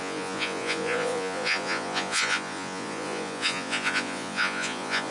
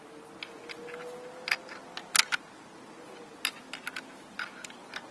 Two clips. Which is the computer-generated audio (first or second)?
first